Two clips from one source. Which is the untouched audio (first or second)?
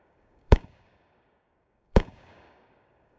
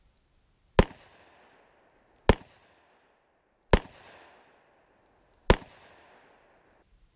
second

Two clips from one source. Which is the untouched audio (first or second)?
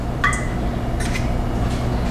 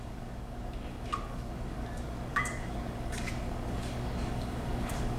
first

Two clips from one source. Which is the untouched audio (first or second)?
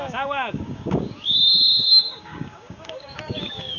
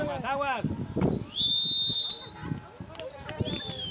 second